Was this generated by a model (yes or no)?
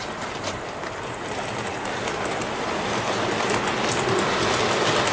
no